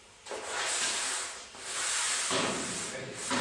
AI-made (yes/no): no